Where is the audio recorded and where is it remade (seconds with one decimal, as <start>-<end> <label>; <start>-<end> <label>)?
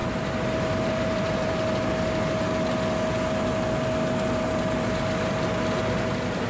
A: 0.0-1.5 remade; 1.5-6.5 recorded